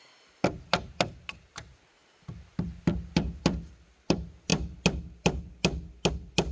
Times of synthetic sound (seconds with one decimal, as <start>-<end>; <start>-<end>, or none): none